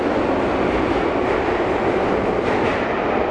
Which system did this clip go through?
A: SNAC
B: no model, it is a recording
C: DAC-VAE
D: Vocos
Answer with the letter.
B